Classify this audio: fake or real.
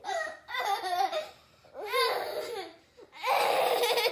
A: real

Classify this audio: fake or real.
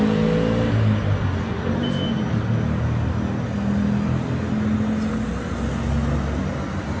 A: real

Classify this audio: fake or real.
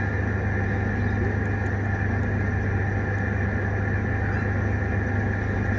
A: real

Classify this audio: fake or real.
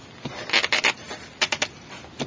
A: real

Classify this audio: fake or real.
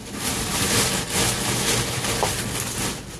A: real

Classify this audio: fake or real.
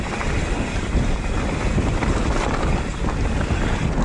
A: real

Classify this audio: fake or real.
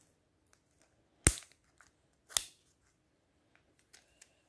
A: real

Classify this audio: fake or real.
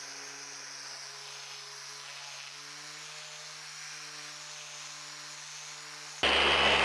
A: real